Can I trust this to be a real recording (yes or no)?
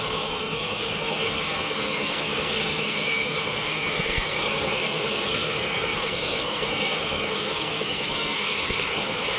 no